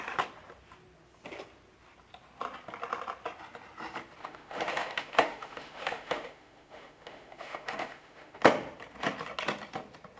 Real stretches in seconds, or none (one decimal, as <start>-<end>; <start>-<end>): 0.0-4.2; 8.4-10.2